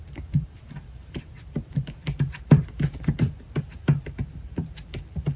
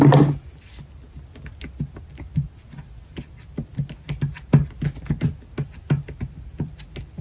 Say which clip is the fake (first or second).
first